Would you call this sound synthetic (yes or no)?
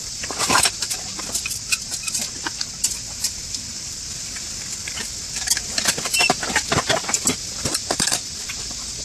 yes